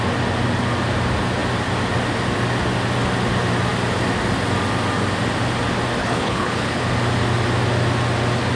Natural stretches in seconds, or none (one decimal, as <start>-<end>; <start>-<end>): 0.0-6.0; 6.8-8.6